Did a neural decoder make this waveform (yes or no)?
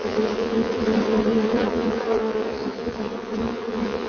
yes